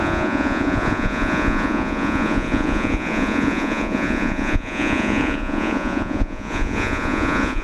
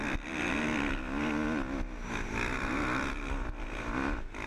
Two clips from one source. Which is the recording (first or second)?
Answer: second